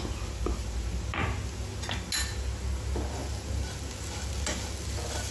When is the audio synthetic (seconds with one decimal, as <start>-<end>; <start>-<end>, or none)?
none